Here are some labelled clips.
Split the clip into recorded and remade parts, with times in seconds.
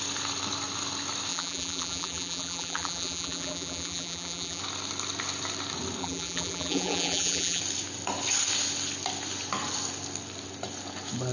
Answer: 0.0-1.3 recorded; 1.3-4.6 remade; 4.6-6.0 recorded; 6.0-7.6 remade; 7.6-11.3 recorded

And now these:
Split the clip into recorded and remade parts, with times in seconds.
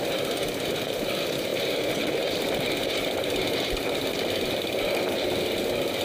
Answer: 0.0-6.0 recorded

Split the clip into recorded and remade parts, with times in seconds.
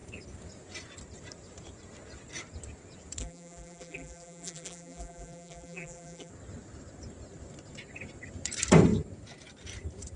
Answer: 0.0-3.2 recorded; 3.2-6.3 remade; 6.3-10.2 recorded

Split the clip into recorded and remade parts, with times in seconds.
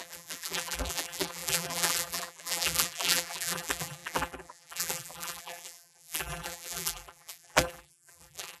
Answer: 0.0-8.6 remade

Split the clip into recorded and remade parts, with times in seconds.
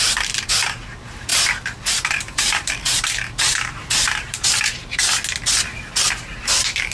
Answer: 0.0-1.3 remade; 1.3-1.9 recorded; 1.9-5.0 remade; 5.0-6.4 recorded; 6.4-6.9 remade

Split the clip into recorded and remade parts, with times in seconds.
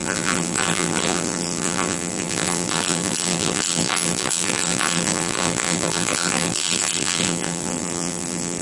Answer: 0.0-8.6 remade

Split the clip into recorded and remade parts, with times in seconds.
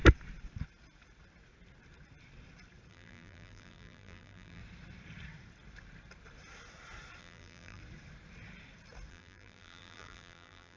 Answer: 0.0-2.9 recorded; 2.9-4.6 remade; 4.6-7.2 recorded; 7.2-7.8 remade; 7.8-9.1 recorded; 9.1-10.8 remade